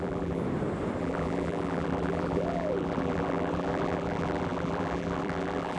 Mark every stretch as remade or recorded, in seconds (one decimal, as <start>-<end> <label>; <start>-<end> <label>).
0.0-0.4 remade; 0.4-1.0 recorded; 1.0-5.8 remade